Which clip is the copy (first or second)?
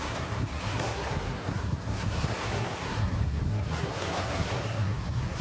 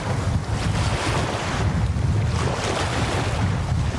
first